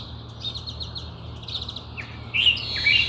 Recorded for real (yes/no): yes